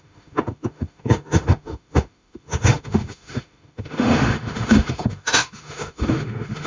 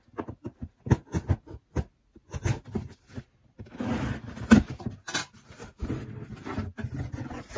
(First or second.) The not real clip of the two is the first